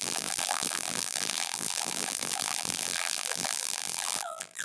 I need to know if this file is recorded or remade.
remade